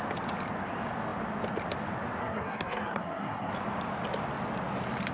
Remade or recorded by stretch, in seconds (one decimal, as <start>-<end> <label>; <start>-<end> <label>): 0.0-2.2 recorded; 2.2-3.5 remade; 3.5-5.1 recorded